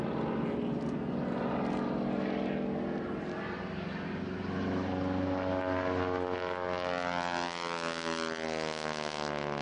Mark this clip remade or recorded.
recorded